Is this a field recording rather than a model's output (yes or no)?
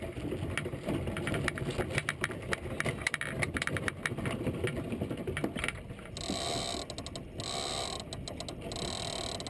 yes